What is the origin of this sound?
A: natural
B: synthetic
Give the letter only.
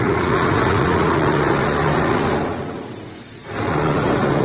B